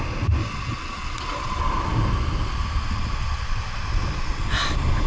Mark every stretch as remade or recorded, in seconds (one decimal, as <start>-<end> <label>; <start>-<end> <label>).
0.0-0.4 recorded; 0.4-1.6 remade; 1.6-5.1 recorded